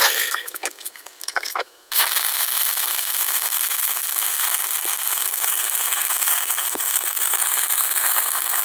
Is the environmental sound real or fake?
fake